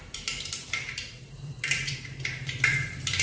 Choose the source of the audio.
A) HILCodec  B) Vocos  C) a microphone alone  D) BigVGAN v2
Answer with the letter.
D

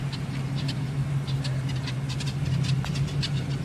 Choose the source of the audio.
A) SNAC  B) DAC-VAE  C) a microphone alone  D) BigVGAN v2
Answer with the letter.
C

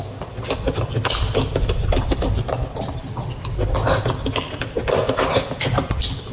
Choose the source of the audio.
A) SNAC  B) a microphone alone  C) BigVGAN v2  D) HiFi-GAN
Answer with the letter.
C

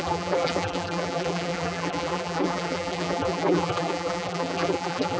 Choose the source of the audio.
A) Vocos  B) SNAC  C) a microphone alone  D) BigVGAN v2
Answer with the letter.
D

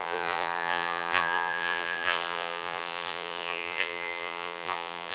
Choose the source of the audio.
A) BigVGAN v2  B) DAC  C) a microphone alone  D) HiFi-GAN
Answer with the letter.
A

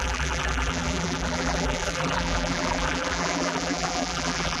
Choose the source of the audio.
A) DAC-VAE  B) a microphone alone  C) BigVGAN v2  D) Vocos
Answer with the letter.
C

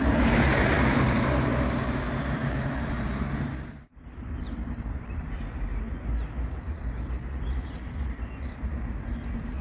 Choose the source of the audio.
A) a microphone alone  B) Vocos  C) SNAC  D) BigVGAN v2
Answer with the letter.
D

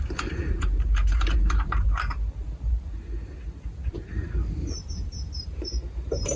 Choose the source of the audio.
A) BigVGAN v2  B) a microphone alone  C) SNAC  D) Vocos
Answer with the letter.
A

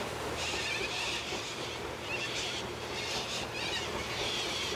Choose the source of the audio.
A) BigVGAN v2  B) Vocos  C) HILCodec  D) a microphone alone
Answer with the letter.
A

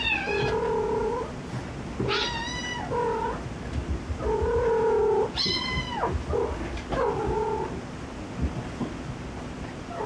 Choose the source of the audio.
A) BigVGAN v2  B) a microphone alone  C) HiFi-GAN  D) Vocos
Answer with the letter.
B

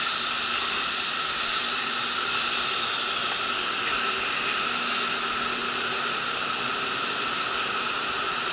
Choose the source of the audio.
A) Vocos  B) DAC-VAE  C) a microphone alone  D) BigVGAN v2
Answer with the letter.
C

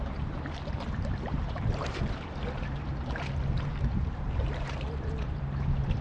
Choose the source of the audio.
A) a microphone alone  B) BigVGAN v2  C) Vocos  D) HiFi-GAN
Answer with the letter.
B